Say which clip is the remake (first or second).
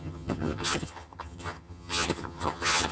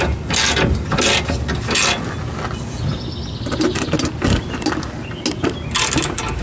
first